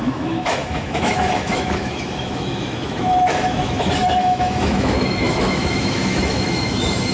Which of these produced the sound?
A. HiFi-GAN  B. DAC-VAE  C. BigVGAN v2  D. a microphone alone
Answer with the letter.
B